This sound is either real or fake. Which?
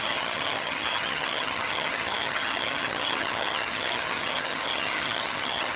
fake